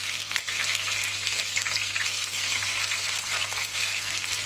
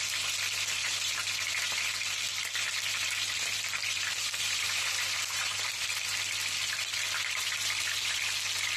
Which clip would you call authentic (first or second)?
second